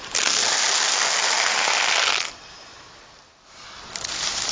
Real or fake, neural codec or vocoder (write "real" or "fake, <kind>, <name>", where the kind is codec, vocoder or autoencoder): real